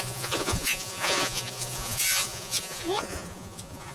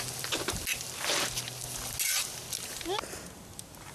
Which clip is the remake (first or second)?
first